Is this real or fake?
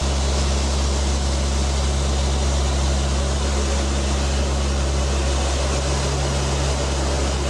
real